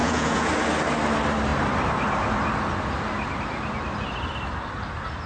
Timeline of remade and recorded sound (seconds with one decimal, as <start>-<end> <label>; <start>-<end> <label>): 0.0-0.5 remade; 0.5-5.3 recorded